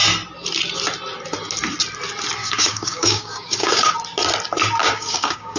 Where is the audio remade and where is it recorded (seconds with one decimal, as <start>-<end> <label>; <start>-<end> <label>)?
0.0-2.4 recorded; 2.4-3.9 remade; 3.9-4.8 recorded; 4.8-5.6 remade